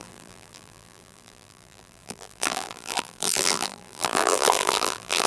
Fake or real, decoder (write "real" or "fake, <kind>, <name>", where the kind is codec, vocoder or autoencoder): fake, vocoder, BigVGAN v2